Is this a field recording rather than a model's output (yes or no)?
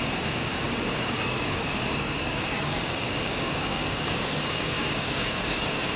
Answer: no